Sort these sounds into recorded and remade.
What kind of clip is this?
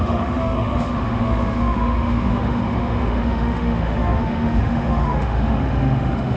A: remade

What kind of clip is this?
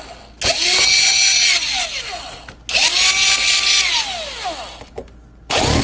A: recorded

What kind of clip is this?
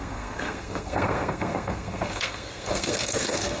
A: remade